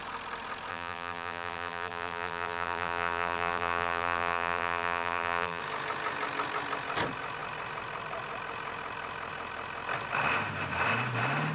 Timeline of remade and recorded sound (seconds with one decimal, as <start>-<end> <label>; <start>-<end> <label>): 0.0-0.7 recorded; 0.7-5.6 remade; 5.6-11.5 recorded

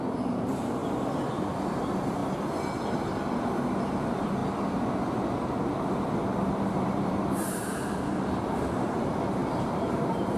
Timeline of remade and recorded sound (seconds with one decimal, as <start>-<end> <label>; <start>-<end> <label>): 0.0-0.8 remade; 0.8-1.7 recorded; 1.7-2.2 remade; 2.2-3.8 recorded; 3.8-4.4 remade; 4.4-6.6 recorded; 6.6-10.4 remade

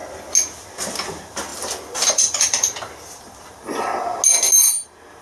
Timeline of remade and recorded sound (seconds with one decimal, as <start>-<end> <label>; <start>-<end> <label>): 0.0-1.5 recorded; 1.5-3.5 remade; 3.5-5.2 recorded

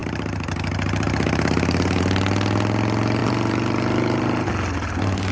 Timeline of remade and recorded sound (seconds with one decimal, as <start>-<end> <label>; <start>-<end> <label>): 0.0-2.0 remade; 2.0-3.2 recorded; 3.2-4.5 remade; 4.5-5.3 recorded

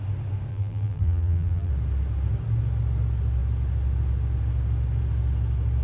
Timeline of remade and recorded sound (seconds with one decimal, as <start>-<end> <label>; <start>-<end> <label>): 0.0-0.5 recorded; 0.5-1.7 remade; 1.7-5.8 recorded